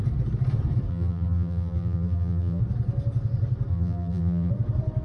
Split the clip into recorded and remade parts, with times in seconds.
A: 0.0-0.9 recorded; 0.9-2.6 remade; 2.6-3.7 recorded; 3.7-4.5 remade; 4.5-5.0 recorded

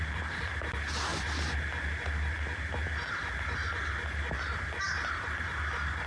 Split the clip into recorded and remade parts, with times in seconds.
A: 0.0-6.1 recorded

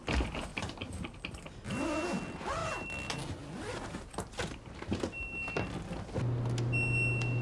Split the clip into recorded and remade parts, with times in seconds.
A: 0.0-0.5 recorded; 0.5-1.1 remade; 1.1-7.4 recorded

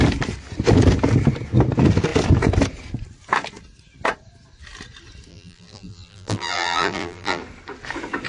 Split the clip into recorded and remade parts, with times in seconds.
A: 0.0-5.3 recorded; 5.3-7.4 remade; 7.4-8.3 recorded

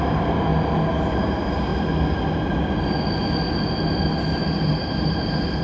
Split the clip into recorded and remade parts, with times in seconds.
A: 0.0-0.5 remade; 0.5-1.1 recorded; 1.1-1.7 remade; 1.7-4.6 recorded; 4.6-5.6 remade